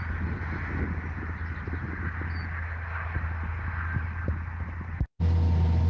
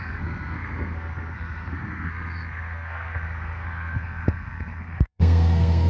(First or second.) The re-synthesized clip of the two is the second